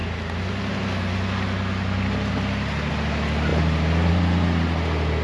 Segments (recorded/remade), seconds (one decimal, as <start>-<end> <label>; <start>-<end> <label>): 0.0-5.2 recorded